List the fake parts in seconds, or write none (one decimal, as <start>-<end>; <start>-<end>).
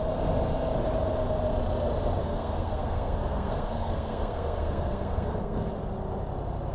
2.2-5.7